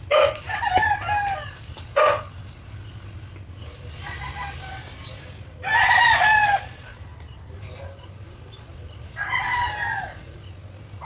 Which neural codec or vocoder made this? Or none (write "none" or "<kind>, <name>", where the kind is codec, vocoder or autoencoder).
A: none